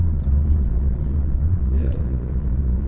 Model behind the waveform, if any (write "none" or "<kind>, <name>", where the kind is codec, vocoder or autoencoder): vocoder, Vocos